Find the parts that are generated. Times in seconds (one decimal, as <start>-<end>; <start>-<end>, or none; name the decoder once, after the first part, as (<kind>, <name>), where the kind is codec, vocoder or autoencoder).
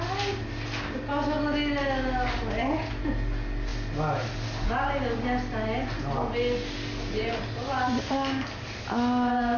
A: none